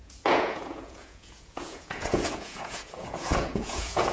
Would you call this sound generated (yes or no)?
yes